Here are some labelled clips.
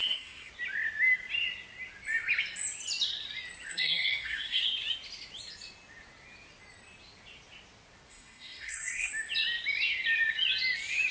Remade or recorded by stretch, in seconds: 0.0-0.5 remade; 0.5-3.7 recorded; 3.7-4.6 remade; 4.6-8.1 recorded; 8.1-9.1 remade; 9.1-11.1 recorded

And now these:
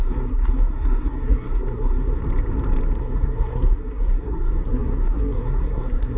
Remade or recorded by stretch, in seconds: 0.0-2.2 remade; 2.2-3.0 recorded; 3.0-6.2 remade

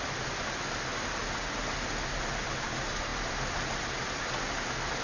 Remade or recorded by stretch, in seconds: 0.0-5.0 recorded

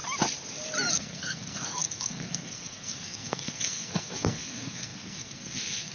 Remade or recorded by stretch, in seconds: 0.0-0.9 recorded; 0.9-5.9 remade

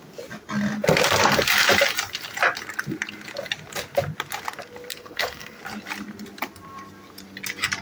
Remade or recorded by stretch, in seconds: 0.0-4.9 recorded; 4.9-5.6 remade; 5.6-7.8 recorded

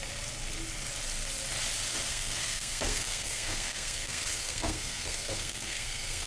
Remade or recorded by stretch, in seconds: 0.0-2.1 recorded; 2.1-6.3 remade

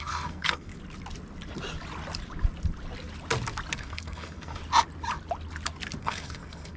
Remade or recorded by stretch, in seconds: 0.0-0.7 remade; 0.7-3.7 recorded; 3.7-4.6 remade; 4.6-6.0 recorded; 6.0-6.8 remade